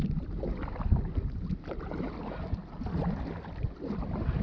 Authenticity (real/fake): real